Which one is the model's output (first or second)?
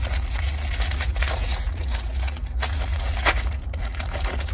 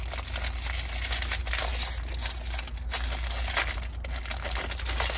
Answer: first